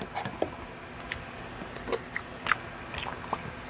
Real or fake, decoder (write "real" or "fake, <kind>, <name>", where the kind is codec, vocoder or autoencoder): real